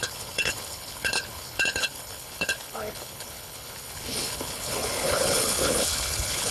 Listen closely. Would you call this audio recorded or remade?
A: remade